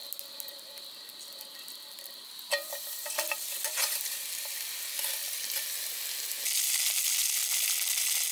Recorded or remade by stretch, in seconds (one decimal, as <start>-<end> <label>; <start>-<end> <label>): 0.0-2.5 recorded; 2.5-4.3 remade; 4.3-8.3 recorded